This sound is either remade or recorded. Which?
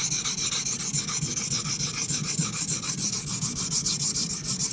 recorded